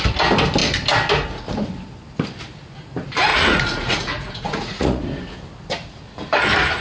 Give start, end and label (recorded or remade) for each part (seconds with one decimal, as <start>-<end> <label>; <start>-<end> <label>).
0.0-3.3 recorded; 3.3-5.0 remade; 5.0-6.8 recorded